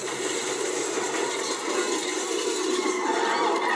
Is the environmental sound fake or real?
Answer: real